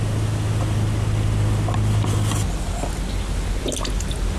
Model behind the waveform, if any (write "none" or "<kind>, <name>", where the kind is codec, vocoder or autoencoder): none